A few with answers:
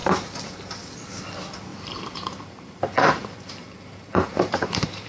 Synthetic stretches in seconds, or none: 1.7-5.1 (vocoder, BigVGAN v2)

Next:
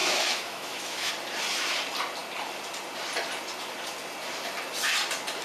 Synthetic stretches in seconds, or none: 0.0-1.1 (autoencoder, DAC-VAE)

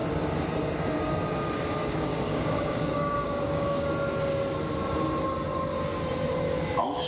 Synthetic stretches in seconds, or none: 1.8-3.9 (codec, DAC)

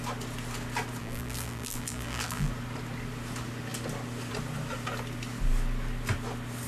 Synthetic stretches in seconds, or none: 1.0-2.5 (vocoder, BigVGAN v2)